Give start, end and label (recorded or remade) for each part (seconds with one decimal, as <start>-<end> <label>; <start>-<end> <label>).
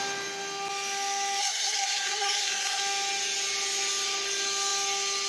0.0-1.4 recorded; 1.4-2.8 remade; 2.8-5.3 recorded